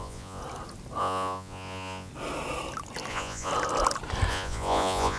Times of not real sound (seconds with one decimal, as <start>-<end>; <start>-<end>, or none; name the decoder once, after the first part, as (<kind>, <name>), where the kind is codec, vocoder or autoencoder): 0.0-0.4 (vocoder, Vocos); 1.0-2.1; 3.1-3.5; 4.3-5.2